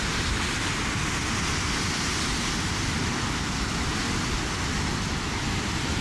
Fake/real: real